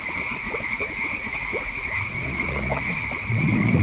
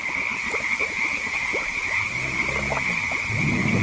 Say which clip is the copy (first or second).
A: first